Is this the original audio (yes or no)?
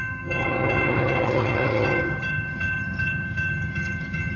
no